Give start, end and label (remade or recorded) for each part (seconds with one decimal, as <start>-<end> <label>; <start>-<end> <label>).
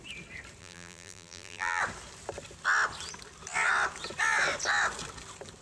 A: 0.0-0.6 recorded; 0.6-1.8 remade; 1.8-5.6 recorded